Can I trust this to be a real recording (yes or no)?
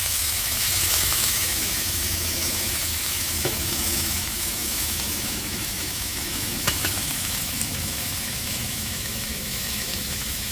no